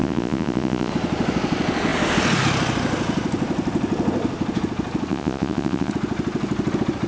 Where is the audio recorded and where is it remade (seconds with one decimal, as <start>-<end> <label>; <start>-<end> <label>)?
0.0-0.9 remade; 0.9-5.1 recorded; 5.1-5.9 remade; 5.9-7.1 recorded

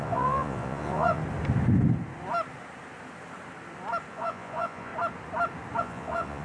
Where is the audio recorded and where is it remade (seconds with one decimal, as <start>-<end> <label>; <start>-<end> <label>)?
0.0-1.2 remade; 1.2-4.1 recorded; 4.1-4.9 remade; 4.9-5.8 recorded; 5.8-6.4 remade

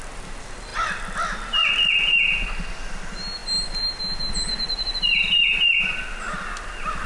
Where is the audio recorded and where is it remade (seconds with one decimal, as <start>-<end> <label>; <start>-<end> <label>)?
0.0-7.1 recorded

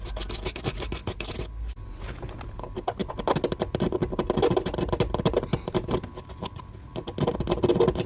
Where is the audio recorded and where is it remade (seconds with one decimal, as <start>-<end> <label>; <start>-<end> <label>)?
0.0-8.1 recorded